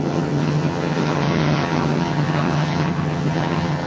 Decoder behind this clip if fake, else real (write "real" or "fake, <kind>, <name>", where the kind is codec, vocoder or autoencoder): fake, vocoder, HiFi-GAN